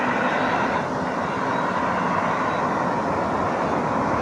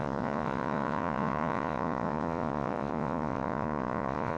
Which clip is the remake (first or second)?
second